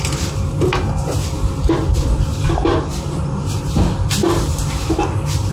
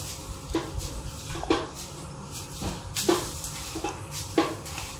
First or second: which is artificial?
second